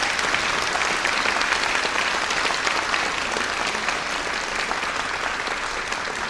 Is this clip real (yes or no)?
yes